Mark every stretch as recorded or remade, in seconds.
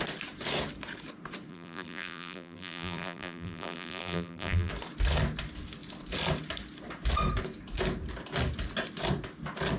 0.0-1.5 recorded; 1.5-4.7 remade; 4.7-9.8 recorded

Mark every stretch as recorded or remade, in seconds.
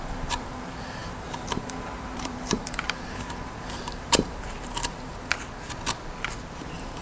0.0-5.1 remade; 5.1-6.6 recorded; 6.6-7.0 remade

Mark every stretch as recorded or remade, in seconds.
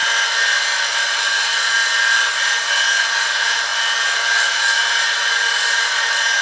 0.0-4.8 recorded; 4.8-5.3 remade; 5.3-6.4 recorded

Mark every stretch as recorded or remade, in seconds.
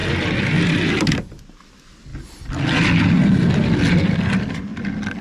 0.0-4.7 recorded; 4.7-5.2 remade